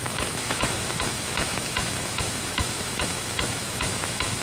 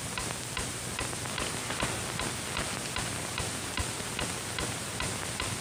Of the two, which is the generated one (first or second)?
first